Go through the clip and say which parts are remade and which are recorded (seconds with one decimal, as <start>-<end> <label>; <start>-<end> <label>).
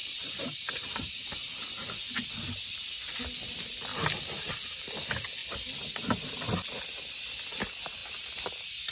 0.0-1.1 remade; 1.1-3.9 recorded; 3.9-4.9 remade; 4.9-8.9 recorded